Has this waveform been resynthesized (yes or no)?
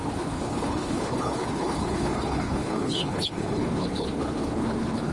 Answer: yes